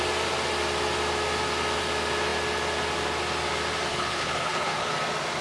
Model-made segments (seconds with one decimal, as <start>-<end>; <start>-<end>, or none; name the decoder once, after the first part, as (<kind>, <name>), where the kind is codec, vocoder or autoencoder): 3.9-4.9 (codec, HILCodec)